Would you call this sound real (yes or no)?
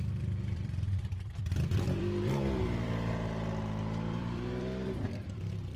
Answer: no